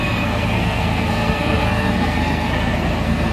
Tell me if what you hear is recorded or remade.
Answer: remade